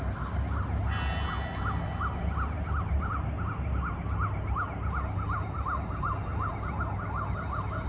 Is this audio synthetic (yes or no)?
no